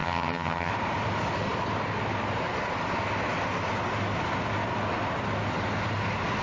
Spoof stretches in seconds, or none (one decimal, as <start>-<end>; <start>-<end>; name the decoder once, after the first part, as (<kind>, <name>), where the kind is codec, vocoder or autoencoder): 0.0-0.7 (vocoder, HiFi-GAN)